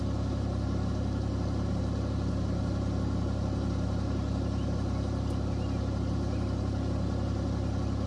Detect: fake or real real